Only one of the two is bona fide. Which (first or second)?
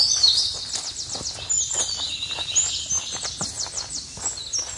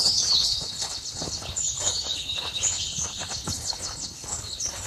first